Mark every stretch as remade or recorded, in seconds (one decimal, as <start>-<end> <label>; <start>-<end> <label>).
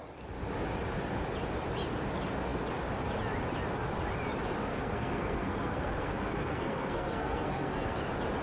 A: 0.0-4.7 recorded; 4.7-8.0 remade; 8.0-8.4 recorded